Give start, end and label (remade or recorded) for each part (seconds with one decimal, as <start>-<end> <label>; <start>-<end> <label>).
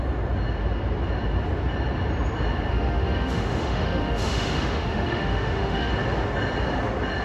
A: 0.0-2.7 recorded; 2.7-5.9 remade; 5.9-7.2 recorded